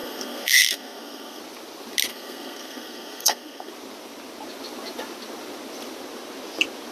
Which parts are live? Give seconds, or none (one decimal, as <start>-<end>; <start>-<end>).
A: 1.4-2.1; 3.7-6.9